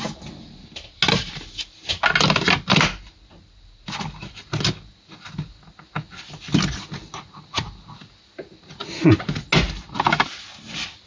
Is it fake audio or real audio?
real